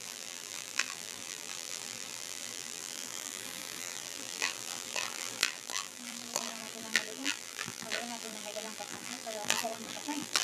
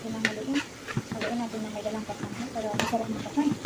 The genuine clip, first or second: second